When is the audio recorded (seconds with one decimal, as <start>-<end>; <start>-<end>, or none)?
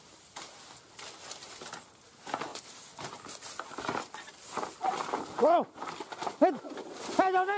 0.0-7.6